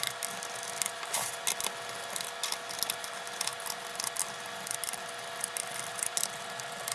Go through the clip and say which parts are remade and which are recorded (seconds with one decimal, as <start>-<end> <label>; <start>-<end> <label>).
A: 0.0-6.9 recorded